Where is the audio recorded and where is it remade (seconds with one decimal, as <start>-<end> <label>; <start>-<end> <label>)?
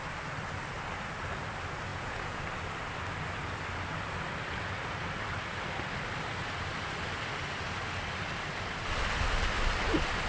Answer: 0.0-1.9 recorded; 1.9-2.4 remade; 2.4-10.3 recorded